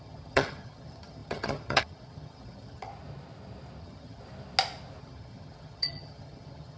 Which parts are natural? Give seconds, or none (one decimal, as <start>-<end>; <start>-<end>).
2.9-3.8; 4.2-5.0